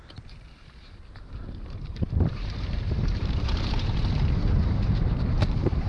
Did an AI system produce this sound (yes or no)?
yes